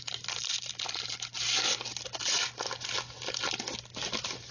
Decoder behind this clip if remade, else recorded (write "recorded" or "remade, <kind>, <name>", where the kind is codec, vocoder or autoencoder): recorded